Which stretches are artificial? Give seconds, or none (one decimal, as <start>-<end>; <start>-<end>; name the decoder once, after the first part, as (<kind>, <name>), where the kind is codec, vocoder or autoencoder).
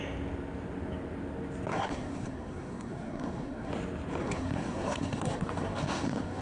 1.7-3.7 (codec, SNAC); 4.2-6.4